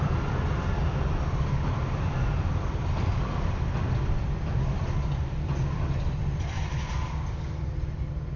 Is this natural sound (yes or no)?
yes